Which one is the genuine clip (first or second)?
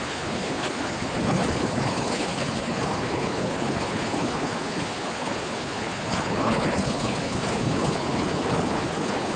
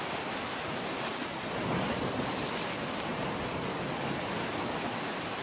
second